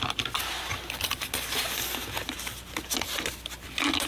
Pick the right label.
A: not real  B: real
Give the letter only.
B